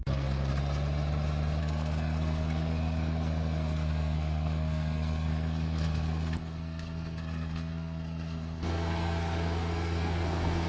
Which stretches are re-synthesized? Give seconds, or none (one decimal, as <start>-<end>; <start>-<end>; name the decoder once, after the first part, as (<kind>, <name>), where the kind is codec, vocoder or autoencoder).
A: 0.0-0.5 (codec, SNAC); 1.6-10.7